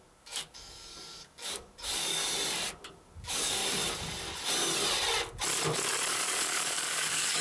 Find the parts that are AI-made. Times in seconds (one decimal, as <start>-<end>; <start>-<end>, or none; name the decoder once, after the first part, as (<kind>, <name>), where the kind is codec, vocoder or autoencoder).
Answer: 0.0-2.2 (codec, DAC); 2.9-3.6; 6.1-7.4